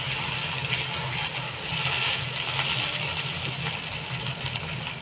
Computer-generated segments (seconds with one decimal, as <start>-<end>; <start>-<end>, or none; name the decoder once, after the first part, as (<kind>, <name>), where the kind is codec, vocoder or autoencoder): none